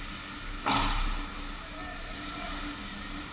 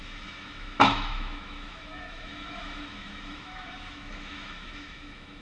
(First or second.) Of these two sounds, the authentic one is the first